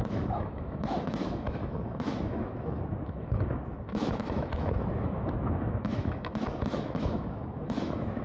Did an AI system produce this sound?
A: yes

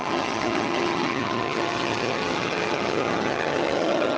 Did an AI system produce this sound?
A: yes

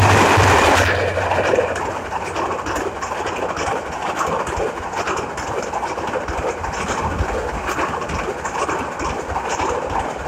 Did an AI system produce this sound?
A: no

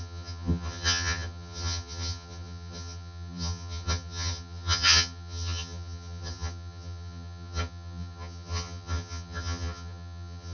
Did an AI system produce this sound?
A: yes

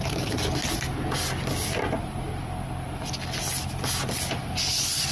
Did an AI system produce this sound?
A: no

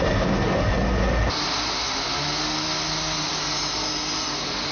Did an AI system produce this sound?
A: no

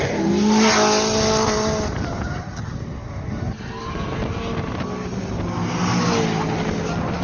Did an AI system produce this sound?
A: no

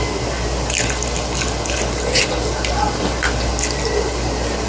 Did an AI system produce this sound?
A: no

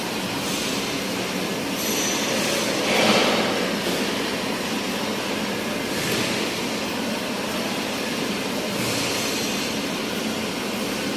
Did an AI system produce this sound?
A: no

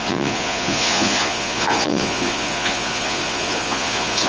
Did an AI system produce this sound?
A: yes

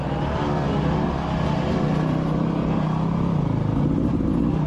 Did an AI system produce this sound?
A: no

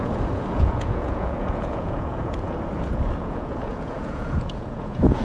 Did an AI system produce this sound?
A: yes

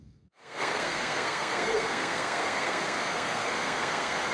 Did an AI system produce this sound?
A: yes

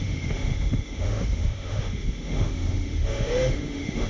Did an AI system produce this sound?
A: yes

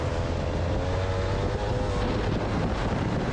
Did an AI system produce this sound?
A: no